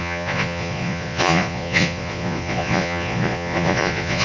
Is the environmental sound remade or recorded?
remade